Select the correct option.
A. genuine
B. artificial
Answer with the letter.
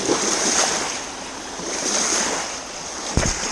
A